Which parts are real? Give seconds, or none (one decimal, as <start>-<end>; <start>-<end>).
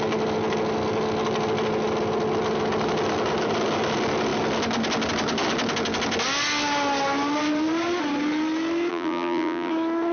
0.0-8.9; 9.7-10.1